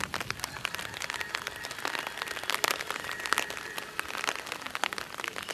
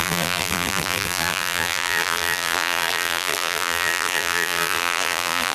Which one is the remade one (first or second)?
second